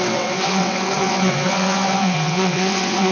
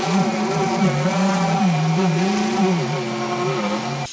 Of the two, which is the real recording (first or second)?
second